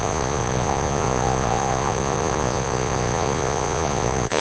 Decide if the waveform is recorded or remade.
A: remade